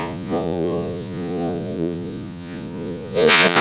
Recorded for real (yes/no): no